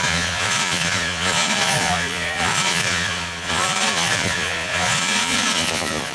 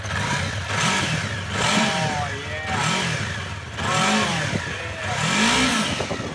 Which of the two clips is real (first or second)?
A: second